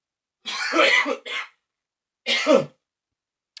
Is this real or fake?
real